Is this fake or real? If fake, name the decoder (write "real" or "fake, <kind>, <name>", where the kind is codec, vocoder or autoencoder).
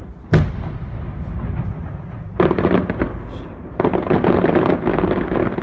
real